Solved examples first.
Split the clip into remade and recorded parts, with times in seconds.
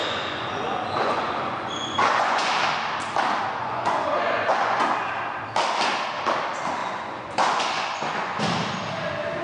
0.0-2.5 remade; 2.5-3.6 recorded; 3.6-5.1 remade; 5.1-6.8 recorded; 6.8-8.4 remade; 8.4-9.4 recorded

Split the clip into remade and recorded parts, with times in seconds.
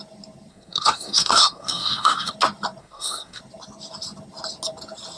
0.0-0.5 recorded; 0.5-2.3 remade; 2.3-2.8 recorded; 2.8-3.4 remade; 3.4-5.2 recorded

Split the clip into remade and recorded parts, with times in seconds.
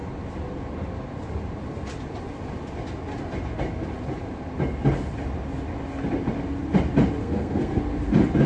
0.0-7.2 recorded; 7.2-7.8 remade; 7.8-8.5 recorded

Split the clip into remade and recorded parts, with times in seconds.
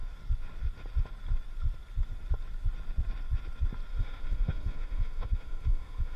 0.0-3.9 recorded; 3.9-6.2 remade